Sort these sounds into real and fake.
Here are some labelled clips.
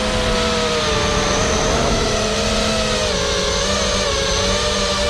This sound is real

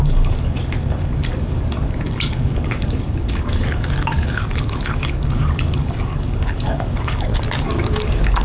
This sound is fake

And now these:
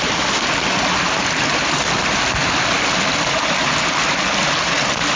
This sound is real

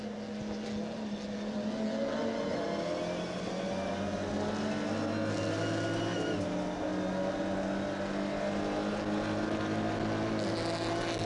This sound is real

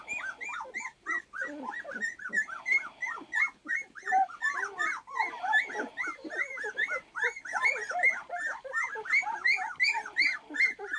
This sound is real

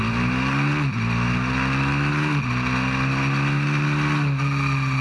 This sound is real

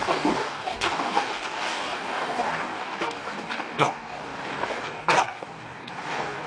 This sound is fake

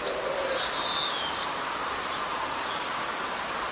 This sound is real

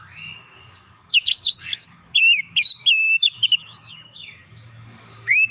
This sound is fake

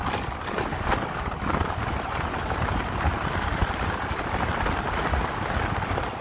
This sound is real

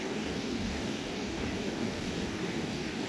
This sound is fake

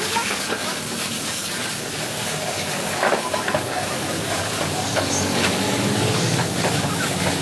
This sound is fake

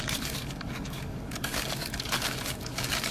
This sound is fake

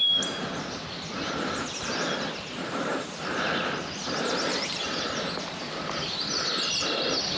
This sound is real